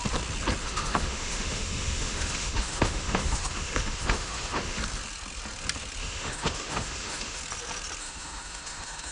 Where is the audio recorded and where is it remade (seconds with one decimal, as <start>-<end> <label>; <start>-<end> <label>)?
0.0-0.6 recorded; 0.6-4.8 remade; 4.8-6.0 recorded; 6.0-7.4 remade; 7.4-8.0 recorded; 8.0-9.1 remade